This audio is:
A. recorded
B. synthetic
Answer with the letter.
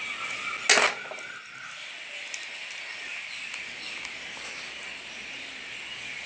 A